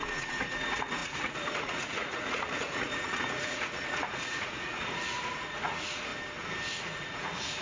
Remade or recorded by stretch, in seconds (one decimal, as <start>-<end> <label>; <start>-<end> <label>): 0.0-6.1 remade; 6.1-6.8 recorded; 6.8-7.6 remade